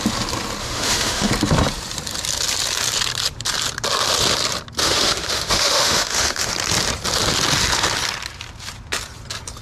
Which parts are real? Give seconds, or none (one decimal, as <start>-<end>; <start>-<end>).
0.0-0.6; 1.3-4.8; 6.5-9.6